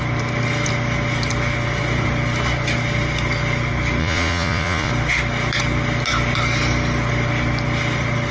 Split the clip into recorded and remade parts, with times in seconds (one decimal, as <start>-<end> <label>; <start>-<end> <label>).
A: 0.0-4.0 recorded; 4.0-4.9 remade; 4.9-8.3 recorded